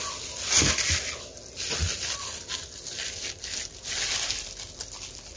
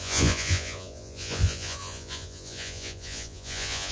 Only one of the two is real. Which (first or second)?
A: first